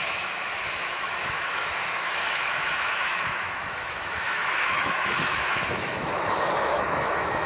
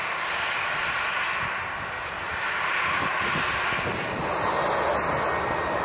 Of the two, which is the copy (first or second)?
first